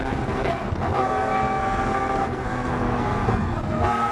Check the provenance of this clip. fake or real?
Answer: fake